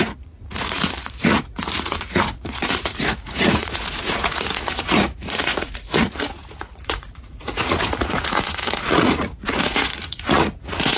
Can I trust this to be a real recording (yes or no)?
no